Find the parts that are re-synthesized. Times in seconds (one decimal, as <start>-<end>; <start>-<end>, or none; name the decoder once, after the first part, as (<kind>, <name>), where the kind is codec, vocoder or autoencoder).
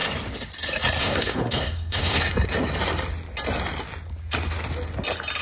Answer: 1.0-2.2 (codec, SNAC)